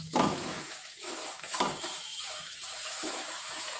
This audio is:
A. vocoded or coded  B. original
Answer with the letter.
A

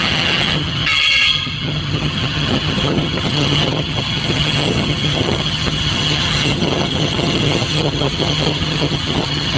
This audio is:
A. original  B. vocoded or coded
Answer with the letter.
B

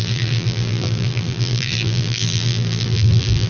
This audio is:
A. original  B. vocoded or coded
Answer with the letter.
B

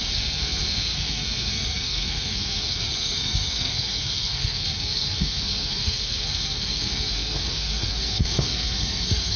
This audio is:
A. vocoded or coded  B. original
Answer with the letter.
A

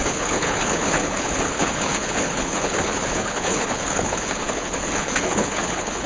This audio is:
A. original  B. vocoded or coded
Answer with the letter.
B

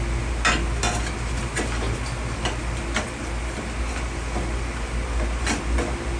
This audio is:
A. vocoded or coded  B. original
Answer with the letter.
B